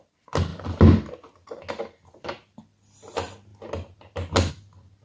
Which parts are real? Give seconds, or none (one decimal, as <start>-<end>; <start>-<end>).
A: 0.0-5.0